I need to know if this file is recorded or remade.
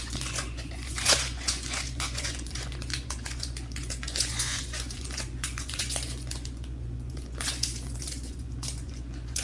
remade